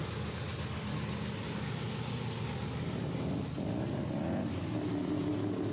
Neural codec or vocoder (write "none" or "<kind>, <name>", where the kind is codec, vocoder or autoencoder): none